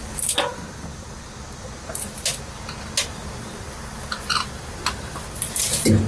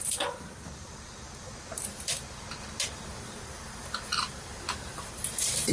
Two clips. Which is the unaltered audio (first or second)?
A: first